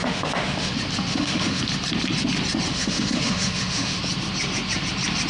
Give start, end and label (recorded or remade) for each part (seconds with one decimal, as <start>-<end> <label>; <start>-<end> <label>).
0.0-0.7 remade; 0.7-1.1 recorded; 1.1-1.6 remade; 1.6-2.7 recorded; 2.7-4.0 remade; 4.0-5.3 recorded